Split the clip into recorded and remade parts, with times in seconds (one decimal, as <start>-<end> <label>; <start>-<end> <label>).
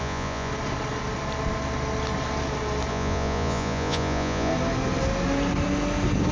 0.0-0.5 remade; 0.5-2.9 recorded; 2.9-4.5 remade; 4.5-6.3 recorded